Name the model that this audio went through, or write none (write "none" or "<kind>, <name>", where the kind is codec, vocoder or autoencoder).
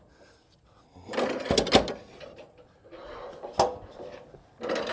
none